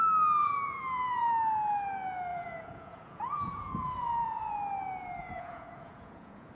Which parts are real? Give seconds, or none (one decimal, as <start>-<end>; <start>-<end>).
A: 0.0-0.4; 1.3-2.3; 4.5-5.2